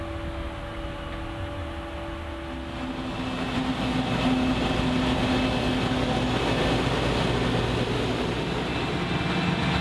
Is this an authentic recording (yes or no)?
yes